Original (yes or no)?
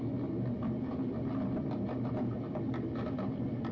yes